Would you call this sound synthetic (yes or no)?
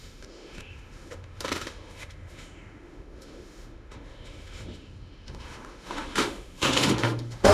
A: yes